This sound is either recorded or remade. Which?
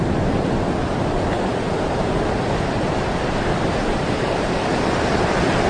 recorded